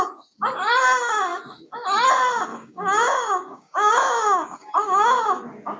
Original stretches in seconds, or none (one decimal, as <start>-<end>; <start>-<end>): 0.0-2.5; 5.2-5.8